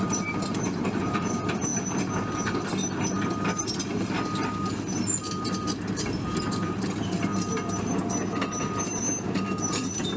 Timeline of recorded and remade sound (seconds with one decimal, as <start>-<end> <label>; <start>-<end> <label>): 0.0-1.7 remade; 1.7-6.4 recorded; 6.4-7.3 remade; 7.3-9.6 recorded; 9.6-10.2 remade